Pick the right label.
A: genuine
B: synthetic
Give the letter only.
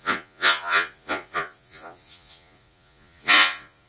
B